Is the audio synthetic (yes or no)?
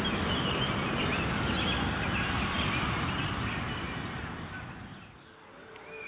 no